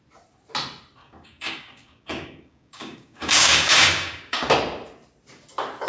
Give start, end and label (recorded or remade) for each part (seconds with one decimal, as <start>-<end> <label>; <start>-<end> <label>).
0.0-1.0 recorded; 1.0-4.5 remade; 4.5-5.9 recorded